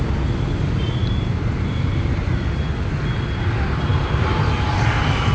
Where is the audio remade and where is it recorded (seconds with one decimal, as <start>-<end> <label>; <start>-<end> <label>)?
0.0-1.0 recorded; 1.0-2.2 remade; 2.2-3.9 recorded; 3.9-4.4 remade; 4.4-5.3 recorded